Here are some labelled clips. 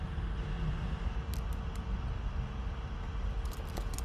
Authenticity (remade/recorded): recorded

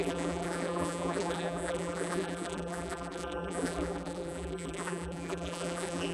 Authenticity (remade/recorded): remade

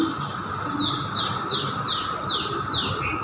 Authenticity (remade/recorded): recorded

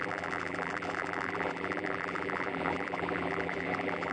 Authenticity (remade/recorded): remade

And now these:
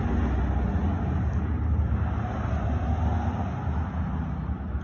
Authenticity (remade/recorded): recorded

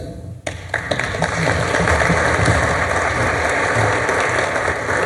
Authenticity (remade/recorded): recorded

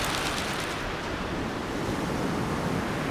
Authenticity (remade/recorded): recorded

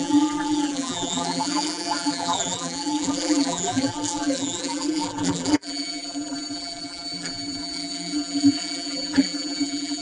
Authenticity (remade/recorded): remade